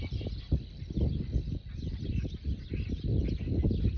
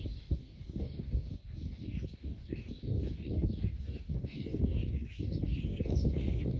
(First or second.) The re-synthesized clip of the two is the second